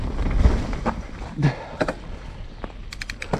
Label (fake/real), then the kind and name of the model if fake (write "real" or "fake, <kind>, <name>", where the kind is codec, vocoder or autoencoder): real